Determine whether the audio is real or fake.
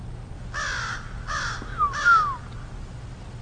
real